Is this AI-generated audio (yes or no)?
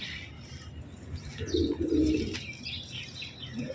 no